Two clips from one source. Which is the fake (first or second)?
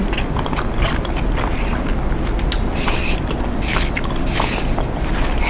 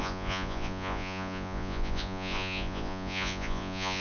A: second